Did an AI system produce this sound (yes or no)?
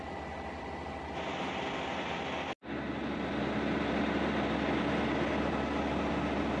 no